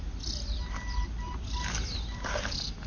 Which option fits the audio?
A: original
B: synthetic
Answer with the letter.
A